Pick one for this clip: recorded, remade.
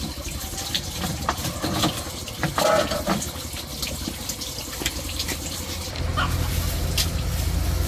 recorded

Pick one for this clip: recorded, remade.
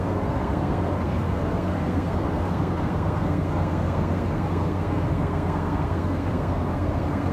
remade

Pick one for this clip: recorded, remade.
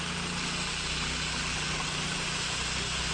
recorded